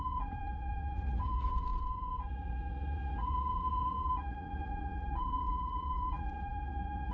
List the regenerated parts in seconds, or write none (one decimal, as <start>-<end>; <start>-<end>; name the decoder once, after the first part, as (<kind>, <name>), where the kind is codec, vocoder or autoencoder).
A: 0.0-7.1 (vocoder, Vocos)